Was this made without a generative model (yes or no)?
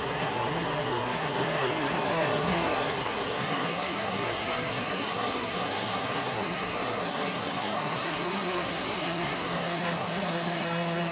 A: no